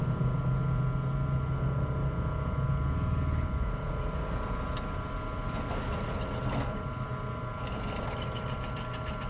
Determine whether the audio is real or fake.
real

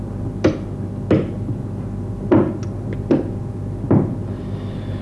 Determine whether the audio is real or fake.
real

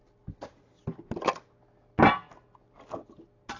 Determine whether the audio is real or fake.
real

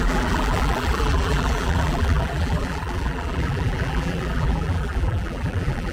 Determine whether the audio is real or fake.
fake